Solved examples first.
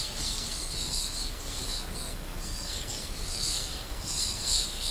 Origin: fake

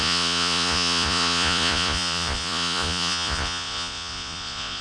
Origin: fake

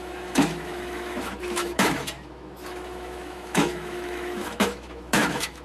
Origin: fake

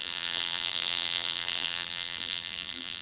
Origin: fake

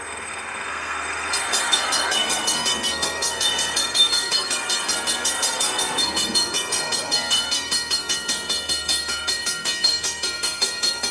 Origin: fake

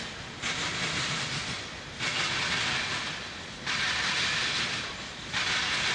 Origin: real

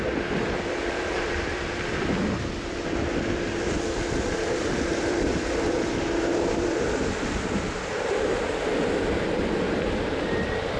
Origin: fake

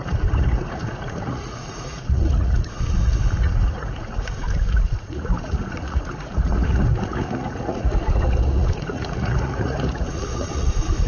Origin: fake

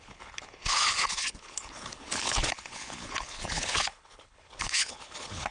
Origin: fake